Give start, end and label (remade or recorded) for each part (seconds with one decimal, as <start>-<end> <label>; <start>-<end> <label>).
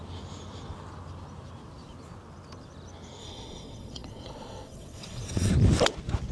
0.0-3.2 recorded; 3.2-5.5 remade; 5.5-6.3 recorded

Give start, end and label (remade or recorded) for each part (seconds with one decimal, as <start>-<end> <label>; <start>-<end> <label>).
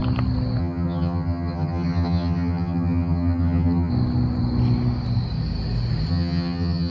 0.0-0.6 recorded; 0.6-3.9 remade; 3.9-6.1 recorded; 6.1-6.9 remade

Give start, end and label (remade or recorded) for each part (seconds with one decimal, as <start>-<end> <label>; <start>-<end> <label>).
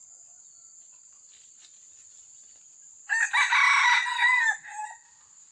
0.0-5.5 recorded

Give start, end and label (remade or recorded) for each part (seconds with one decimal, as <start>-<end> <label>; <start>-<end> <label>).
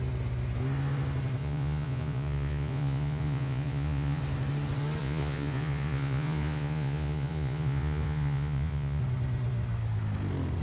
0.0-1.4 recorded; 1.4-4.2 remade; 4.2-5.0 recorded; 5.0-9.0 remade; 9.0-10.6 recorded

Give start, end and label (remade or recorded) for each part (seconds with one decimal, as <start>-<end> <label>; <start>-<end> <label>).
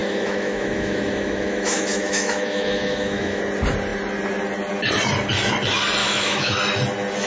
0.0-3.4 remade; 3.4-6.0 recorded; 6.0-6.6 remade; 6.6-7.3 recorded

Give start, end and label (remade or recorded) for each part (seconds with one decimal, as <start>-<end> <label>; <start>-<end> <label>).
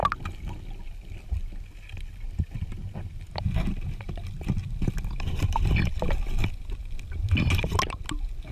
0.0-8.5 recorded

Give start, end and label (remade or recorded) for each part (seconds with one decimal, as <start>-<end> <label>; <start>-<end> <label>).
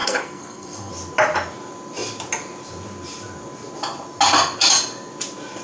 0.0-0.9 remade; 0.9-5.6 recorded